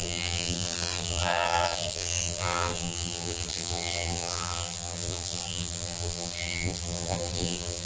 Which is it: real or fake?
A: fake